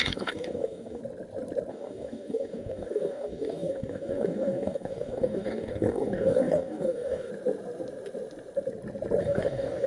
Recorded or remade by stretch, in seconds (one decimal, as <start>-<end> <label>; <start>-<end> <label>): 0.0-1.0 remade; 1.0-1.7 recorded; 1.7-7.3 remade; 7.3-9.2 recorded; 9.2-9.9 remade